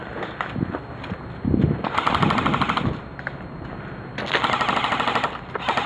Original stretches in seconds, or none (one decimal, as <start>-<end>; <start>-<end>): 0.0-5.9